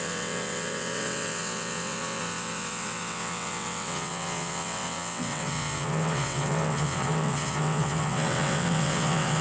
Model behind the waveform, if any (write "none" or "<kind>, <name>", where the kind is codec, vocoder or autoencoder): vocoder, WaveNeXt